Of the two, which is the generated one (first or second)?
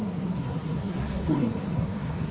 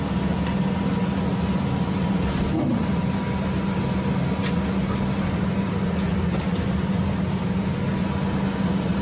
first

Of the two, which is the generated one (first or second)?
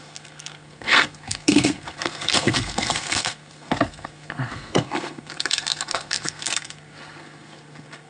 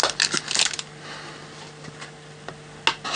first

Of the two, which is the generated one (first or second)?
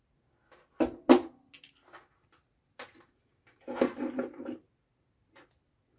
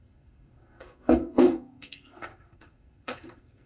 second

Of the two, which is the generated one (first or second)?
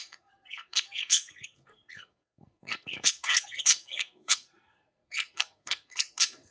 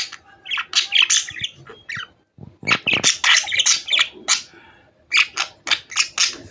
first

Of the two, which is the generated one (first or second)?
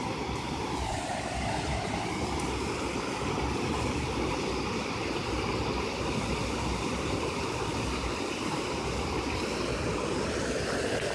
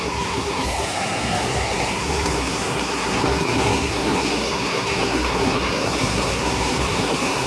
second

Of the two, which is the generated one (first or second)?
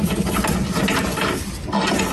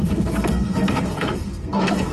second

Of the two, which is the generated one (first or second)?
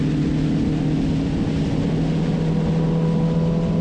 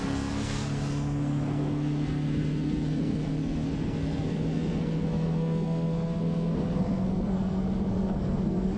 second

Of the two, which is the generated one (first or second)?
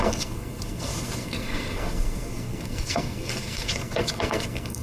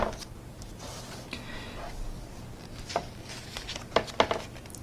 first